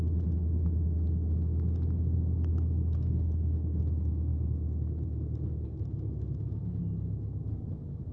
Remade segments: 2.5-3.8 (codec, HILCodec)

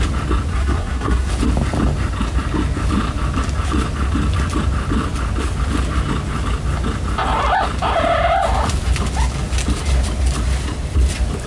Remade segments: 0.5-1.3 (codec, SNAC)

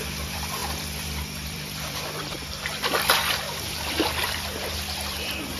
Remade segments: 0.0-5.6 (vocoder, BigVGAN v2)

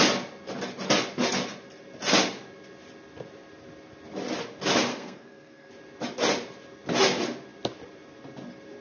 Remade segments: 4.9-5.7 (codec, SNAC)

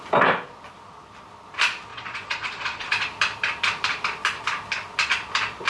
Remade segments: 1.9-2.9 (vocoder, Vocos)

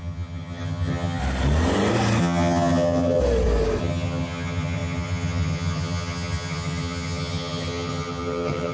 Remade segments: 0.0-1.2 (vocoder, HiFi-GAN); 2.2-3.2; 3.8-8.7

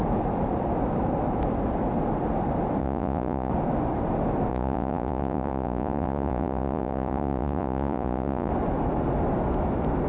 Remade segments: 2.8-3.5 (vocoder, Vocos); 4.5-8.5

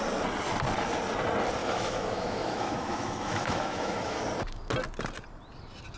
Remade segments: 1.6-4.2 (autoencoder, DAC-VAE)